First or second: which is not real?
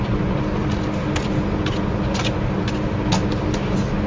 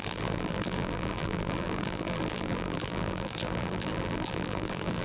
second